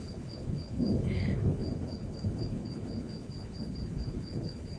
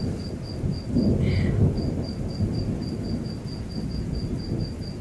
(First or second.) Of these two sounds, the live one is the second